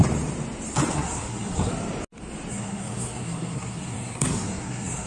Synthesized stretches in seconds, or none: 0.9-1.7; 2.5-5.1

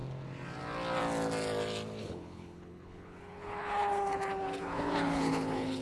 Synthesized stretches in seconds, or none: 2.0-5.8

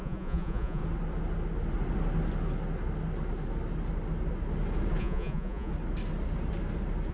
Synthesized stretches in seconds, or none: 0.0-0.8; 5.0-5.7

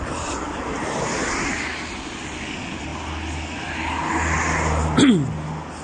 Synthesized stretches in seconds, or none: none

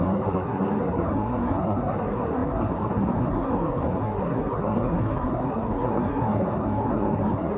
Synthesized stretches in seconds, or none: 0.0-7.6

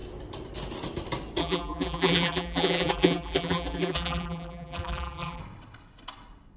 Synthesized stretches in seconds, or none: 1.4-5.4

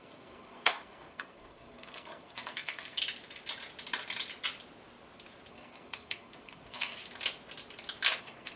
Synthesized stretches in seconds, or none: 0.0-3.0; 5.5-7.0; 8.2-8.6

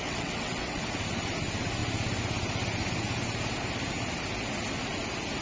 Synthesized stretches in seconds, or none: 0.0-0.8